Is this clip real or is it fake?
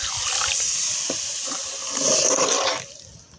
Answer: real